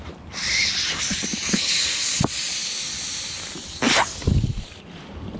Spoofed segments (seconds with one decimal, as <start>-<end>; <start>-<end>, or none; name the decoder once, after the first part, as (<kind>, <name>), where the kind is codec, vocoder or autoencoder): 0.0-1.4 (vocoder, BigVGAN v2); 4.6-5.4